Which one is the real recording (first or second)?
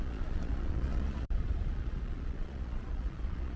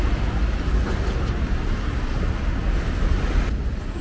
second